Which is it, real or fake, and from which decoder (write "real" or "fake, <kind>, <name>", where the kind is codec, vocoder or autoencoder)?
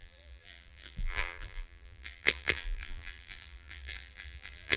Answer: fake, vocoder, BigVGAN v2